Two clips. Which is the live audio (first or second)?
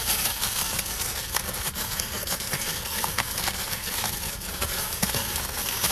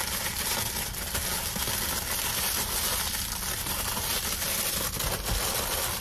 second